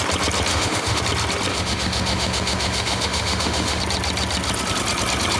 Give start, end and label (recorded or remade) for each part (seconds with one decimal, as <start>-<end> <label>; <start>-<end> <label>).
0.0-0.5 recorded; 0.5-1.0 remade; 1.0-1.5 recorded; 1.5-3.8 remade; 3.8-5.4 recorded